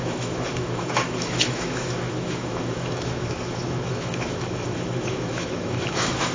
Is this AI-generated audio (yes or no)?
yes